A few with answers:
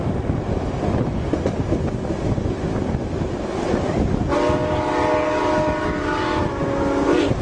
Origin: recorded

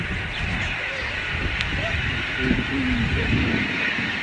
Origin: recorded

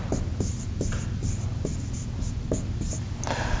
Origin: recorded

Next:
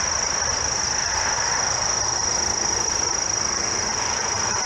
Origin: recorded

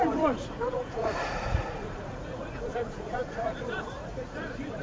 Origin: remade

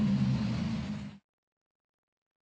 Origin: recorded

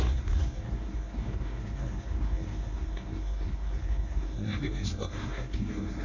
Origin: remade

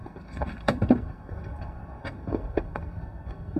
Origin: remade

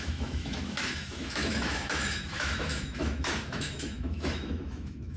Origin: remade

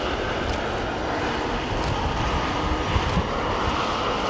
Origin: recorded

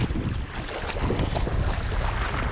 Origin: recorded